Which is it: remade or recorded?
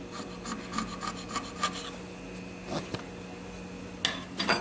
recorded